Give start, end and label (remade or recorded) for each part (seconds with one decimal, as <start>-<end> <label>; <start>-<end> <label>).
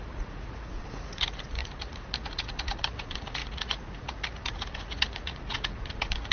0.0-6.3 remade